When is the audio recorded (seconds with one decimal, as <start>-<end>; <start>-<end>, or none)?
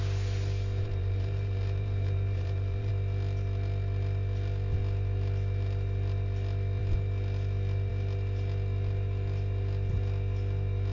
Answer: 0.0-0.8; 2.9-10.9